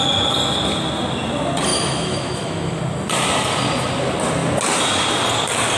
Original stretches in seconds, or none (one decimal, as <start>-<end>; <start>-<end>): 0.0-1.7; 2.8-5.8